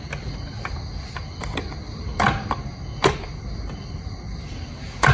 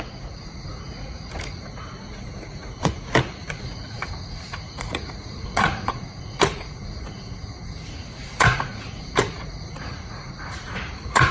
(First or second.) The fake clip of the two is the second